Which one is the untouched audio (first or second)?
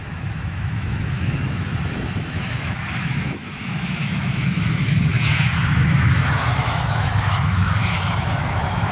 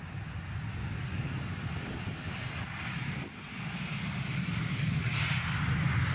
second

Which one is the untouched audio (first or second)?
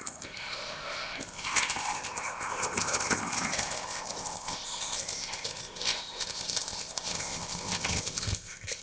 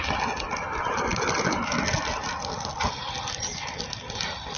second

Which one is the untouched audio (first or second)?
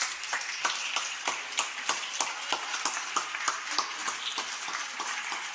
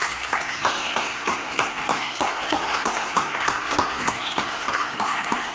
first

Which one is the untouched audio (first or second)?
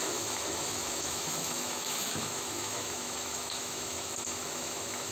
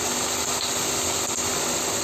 second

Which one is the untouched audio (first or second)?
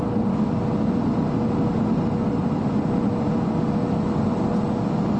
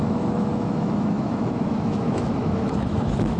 first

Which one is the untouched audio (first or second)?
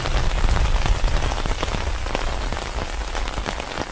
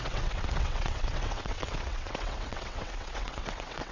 first